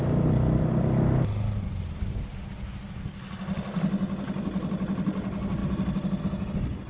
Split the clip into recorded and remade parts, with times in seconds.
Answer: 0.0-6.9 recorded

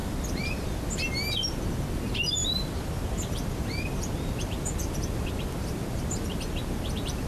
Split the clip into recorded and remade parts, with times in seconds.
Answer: 0.0-0.8 remade; 0.8-2.4 recorded; 2.4-6.0 remade; 6.0-7.3 recorded